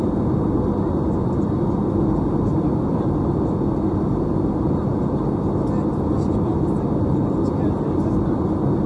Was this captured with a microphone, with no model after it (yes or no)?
yes